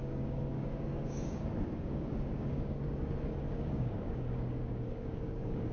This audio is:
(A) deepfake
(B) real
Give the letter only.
A